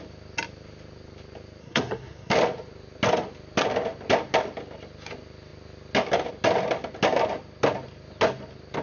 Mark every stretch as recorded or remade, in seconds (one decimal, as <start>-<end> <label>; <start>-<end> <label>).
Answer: 0.0-1.6 recorded; 1.6-2.3 remade; 2.3-8.8 recorded